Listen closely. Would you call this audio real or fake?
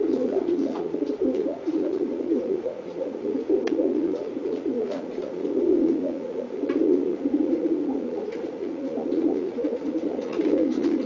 fake